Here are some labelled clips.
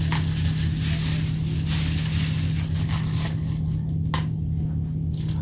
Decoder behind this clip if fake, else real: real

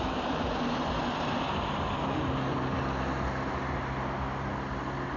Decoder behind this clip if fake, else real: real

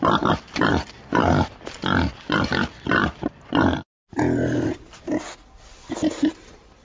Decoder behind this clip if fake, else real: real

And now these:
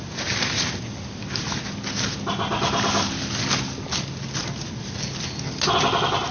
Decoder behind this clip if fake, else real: real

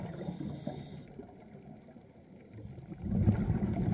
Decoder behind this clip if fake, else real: real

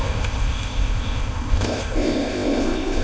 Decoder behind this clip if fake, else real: fake, codec, ZipCodec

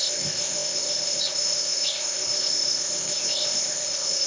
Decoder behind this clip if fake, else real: fake, codec, ZipCodec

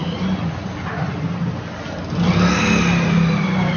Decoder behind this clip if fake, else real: real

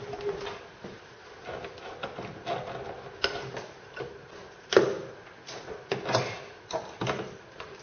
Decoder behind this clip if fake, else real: real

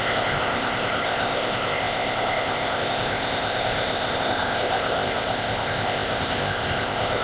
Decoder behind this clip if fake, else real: fake, codec, ZipCodec